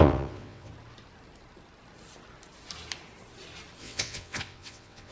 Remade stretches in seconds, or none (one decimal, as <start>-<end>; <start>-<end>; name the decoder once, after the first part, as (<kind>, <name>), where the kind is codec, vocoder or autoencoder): 0.0-0.7 (vocoder, WaveNeXt); 3.8-5.1